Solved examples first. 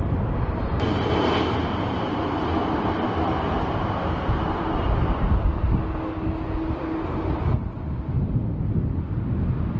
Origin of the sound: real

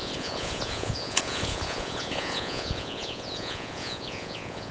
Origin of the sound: fake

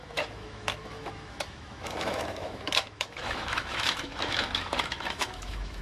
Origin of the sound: fake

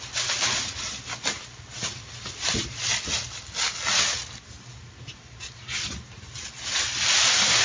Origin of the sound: real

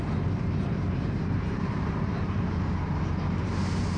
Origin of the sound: fake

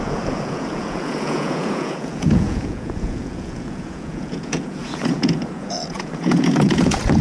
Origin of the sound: fake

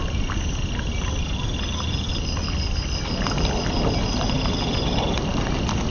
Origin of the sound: real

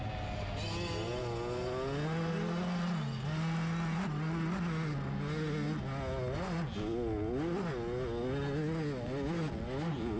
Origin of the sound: real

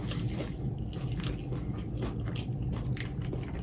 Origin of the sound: real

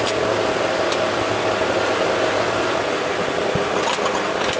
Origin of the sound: real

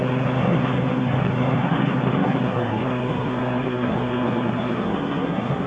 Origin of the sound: fake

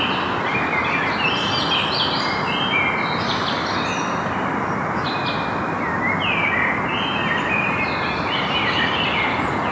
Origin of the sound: real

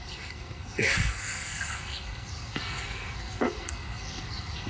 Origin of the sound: fake